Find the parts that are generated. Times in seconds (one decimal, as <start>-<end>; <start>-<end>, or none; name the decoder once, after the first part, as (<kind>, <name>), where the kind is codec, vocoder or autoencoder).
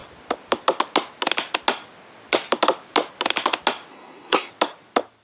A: 3.9-4.5 (codec, SNAC)